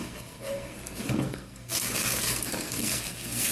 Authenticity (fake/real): fake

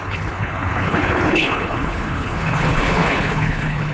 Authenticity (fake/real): fake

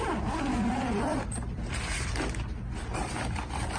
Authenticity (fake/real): fake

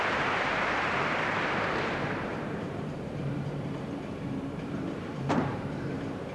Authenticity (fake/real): fake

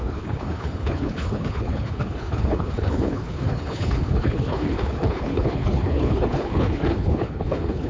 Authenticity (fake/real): fake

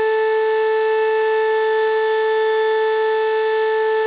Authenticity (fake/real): real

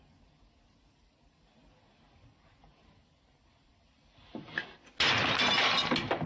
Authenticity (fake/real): real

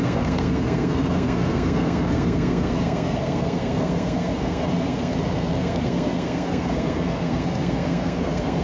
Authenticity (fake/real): fake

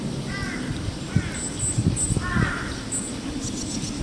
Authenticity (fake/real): real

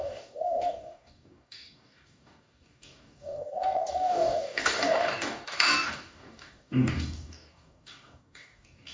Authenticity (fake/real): fake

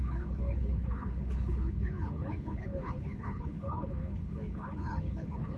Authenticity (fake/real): fake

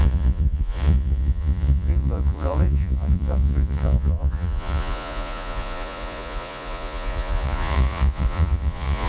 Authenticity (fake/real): fake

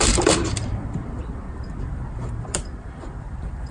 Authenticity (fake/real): fake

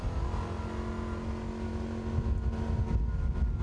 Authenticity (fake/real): real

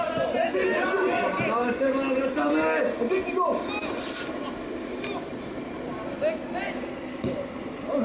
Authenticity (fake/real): real